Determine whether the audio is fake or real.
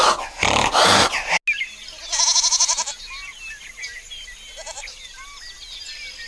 real